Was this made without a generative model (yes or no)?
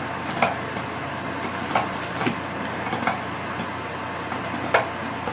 yes